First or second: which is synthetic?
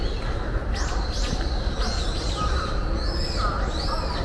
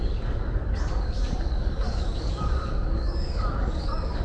second